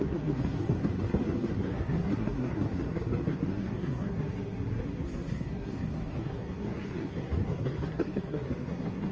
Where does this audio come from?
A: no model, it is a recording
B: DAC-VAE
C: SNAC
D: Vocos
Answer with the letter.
C